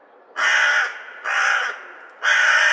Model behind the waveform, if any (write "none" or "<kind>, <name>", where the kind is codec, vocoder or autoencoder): none